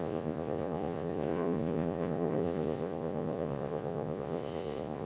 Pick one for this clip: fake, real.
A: fake